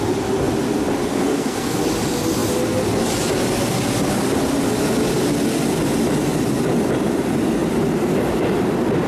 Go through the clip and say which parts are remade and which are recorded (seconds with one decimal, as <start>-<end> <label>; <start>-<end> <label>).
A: 0.0-1.1 recorded; 1.1-1.8 remade; 1.8-9.1 recorded